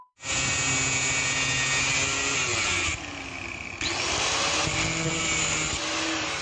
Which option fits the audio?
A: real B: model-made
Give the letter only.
A